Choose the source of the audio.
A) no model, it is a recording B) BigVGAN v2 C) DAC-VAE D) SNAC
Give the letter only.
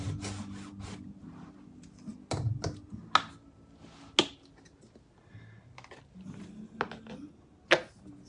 A